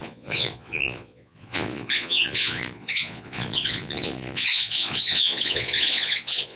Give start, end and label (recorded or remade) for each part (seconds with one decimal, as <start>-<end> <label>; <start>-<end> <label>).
0.0-6.6 remade